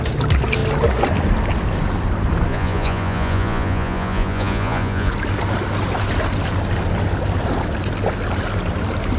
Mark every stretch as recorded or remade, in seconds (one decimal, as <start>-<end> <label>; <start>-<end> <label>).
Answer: 0.0-2.5 recorded; 2.5-5.1 remade; 5.1-9.2 recorded